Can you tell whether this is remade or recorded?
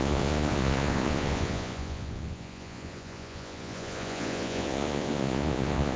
remade